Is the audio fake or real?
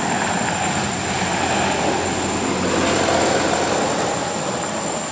real